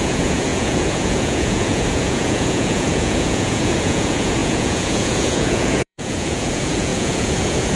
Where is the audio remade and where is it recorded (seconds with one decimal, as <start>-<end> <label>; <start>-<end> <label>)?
0.0-7.8 remade